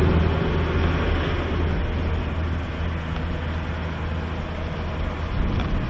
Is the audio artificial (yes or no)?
no